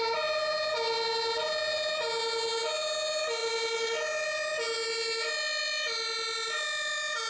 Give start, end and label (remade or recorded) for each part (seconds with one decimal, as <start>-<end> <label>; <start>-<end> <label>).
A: 0.0-7.3 recorded